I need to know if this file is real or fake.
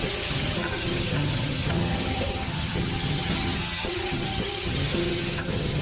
fake